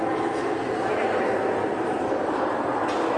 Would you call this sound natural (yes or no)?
yes